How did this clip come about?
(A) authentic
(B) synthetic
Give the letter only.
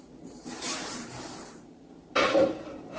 B